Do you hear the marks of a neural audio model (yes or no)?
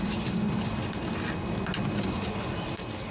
no